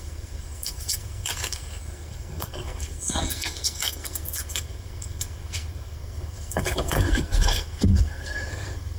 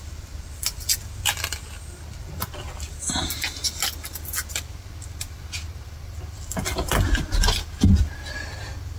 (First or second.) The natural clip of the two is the second